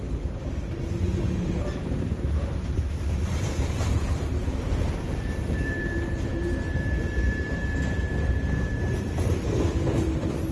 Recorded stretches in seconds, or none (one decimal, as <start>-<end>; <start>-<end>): none